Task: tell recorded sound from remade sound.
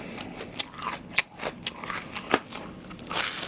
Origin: recorded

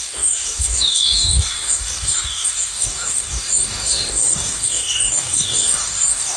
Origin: remade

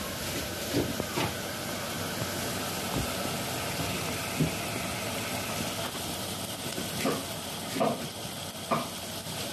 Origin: recorded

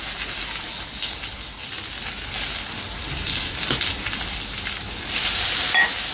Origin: recorded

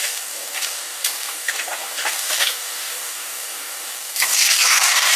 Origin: remade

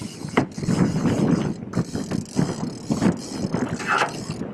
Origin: recorded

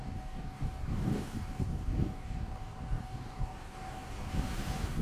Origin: remade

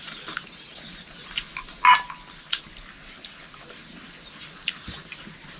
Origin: recorded